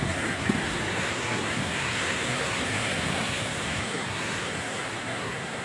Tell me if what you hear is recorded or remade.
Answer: remade